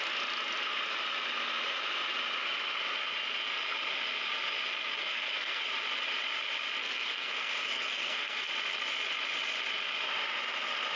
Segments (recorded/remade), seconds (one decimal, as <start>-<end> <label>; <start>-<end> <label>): 0.0-5.0 recorded; 5.0-5.6 remade; 5.6-6.8 recorded; 6.8-8.5 remade; 8.5-11.0 recorded